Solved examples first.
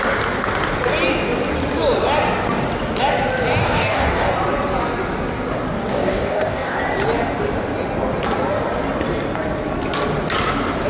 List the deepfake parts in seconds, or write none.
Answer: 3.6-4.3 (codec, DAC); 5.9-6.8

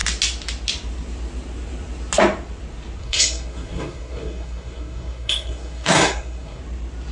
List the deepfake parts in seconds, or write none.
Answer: 3.0-6.6 (codec, SNAC)

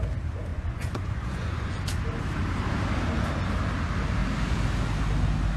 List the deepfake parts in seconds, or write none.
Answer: 0.5-1.8 (vocoder, Vocos)

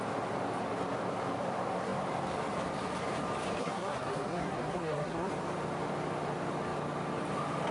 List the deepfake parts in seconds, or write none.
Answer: 3.6-5.3 (codec, SNAC)